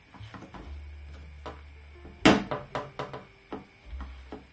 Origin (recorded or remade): recorded